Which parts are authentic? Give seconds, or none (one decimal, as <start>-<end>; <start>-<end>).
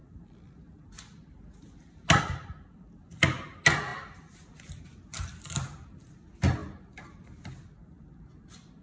0.0-8.8